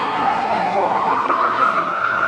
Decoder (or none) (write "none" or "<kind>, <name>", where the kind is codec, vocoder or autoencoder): codec, SNAC